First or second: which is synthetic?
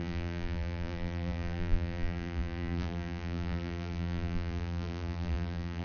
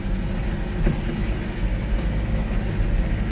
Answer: first